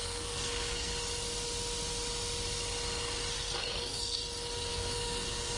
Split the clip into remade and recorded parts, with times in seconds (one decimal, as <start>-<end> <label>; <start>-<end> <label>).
0.0-0.9 remade; 0.9-3.3 recorded; 3.3-4.2 remade; 4.2-4.7 recorded; 4.7-5.6 remade